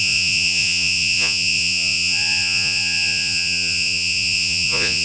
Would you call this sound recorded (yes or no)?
no